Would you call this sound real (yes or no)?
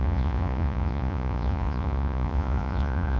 no